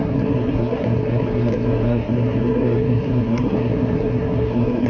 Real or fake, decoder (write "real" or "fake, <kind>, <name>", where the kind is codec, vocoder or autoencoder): fake, codec, SNAC